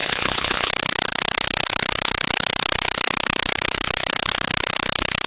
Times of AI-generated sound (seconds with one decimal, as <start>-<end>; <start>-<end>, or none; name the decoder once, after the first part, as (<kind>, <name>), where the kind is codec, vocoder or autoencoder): 0.0-0.7 (vocoder, WaveNeXt)